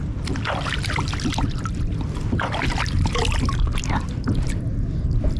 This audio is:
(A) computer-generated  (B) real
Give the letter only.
B